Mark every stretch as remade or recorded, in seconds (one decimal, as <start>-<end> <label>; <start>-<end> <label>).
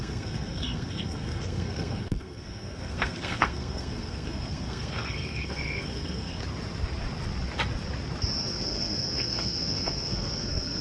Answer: 0.0-6.4 remade; 6.4-8.4 recorded; 8.4-10.8 remade